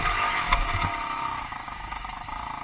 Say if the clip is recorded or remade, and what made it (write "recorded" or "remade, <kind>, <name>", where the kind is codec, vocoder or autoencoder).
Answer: remade, autoencoder, DAC-VAE